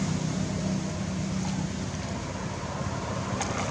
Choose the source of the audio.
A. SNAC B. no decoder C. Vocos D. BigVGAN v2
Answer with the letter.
B